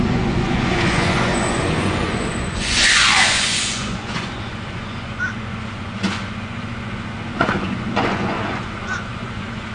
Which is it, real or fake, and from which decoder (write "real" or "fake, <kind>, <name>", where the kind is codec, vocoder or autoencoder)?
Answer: fake, vocoder, Vocos